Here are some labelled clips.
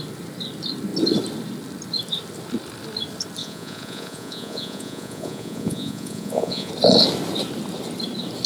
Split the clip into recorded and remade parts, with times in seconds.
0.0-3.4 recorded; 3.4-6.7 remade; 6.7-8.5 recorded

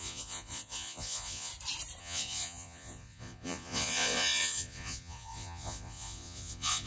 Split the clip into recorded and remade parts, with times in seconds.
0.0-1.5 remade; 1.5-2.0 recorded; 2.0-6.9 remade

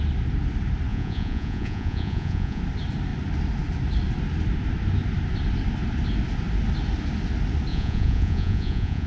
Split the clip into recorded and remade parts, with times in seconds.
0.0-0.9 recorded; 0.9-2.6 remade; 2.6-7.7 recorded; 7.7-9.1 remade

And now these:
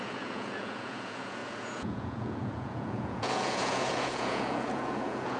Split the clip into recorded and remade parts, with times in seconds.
0.0-5.4 remade